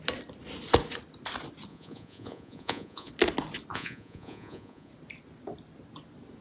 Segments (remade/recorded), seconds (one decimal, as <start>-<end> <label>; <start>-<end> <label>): 0.0-1.7 recorded; 1.7-3.1 remade; 3.1-3.7 recorded; 3.7-4.9 remade; 4.9-6.4 recorded